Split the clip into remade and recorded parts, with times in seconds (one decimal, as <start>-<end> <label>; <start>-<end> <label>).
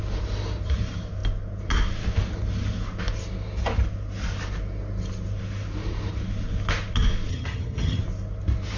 0.0-7.3 recorded; 7.3-8.0 remade; 8.0-8.8 recorded